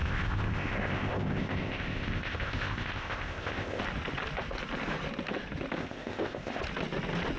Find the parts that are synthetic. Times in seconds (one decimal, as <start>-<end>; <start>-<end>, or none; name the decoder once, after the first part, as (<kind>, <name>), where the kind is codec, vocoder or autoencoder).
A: 0.0-3.8 (codec, ZipCodec); 5.8-6.6